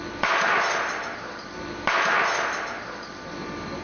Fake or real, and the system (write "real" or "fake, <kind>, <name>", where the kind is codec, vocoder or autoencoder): real